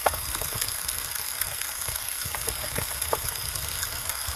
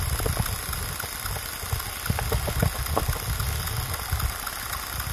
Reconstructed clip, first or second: first